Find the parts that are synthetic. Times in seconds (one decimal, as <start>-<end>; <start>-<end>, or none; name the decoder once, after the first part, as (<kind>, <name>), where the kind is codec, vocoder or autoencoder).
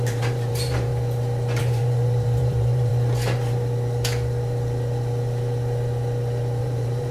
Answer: 0.0-0.9 (vocoder, BigVGAN v2); 1.6-2.9; 6.6-7.1